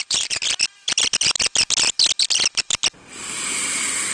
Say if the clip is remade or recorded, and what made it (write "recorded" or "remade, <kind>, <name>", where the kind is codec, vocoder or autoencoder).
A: recorded